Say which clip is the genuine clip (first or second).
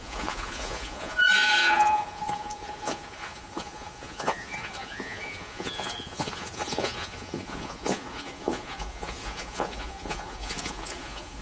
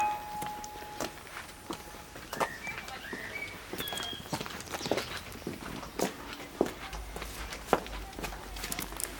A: second